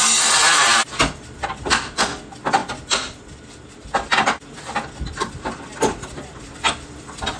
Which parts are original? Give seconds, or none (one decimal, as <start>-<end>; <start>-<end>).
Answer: 0.0-7.4